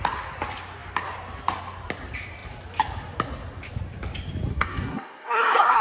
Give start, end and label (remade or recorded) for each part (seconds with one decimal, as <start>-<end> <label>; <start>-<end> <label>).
0.0-4.5 recorded; 4.5-5.8 remade